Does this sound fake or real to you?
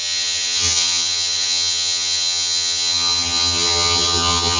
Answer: fake